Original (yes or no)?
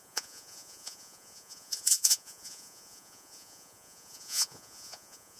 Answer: no